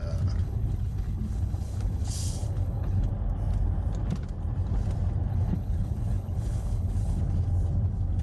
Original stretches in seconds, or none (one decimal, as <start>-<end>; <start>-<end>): 0.0-0.4; 3.1-5.3; 7.2-8.2